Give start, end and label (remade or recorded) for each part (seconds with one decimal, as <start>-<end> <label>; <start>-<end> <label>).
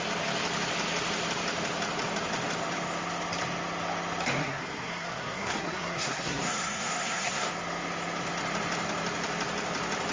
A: 0.0-4.4 recorded; 4.4-7.5 remade; 7.5-10.1 recorded